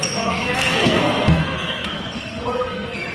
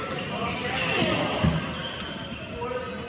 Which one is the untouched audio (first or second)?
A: second